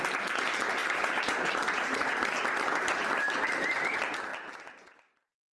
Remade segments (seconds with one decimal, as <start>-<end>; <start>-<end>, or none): 0.8-2.1